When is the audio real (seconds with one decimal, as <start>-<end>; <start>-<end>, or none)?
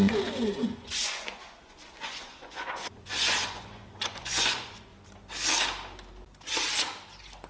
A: 4.9-7.5